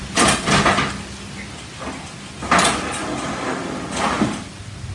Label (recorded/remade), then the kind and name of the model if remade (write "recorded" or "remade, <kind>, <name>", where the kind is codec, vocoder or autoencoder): recorded